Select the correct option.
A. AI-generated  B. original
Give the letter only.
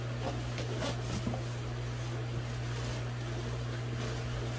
B